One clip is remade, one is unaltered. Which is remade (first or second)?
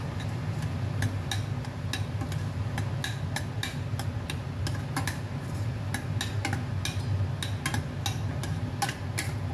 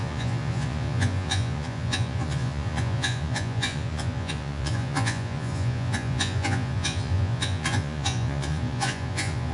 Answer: second